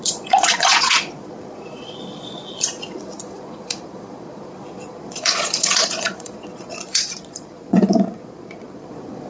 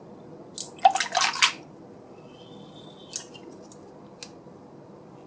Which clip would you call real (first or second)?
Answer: second